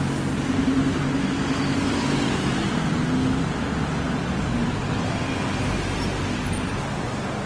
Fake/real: real